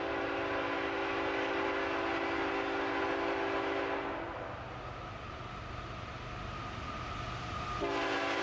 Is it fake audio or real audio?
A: real